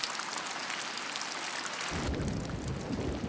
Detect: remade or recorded recorded